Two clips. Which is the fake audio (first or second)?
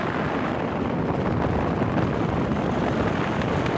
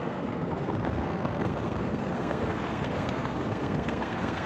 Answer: second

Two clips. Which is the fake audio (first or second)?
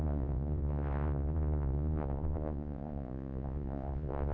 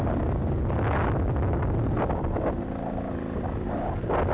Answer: first